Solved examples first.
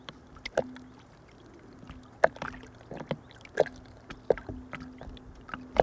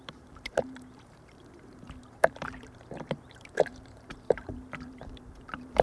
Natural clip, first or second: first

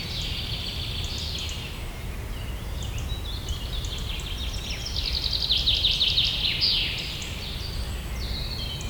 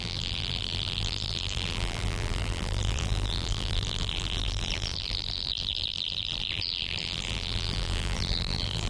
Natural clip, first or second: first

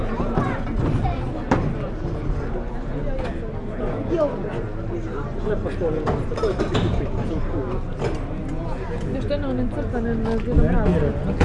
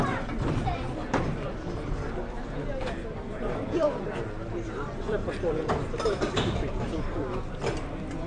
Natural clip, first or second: first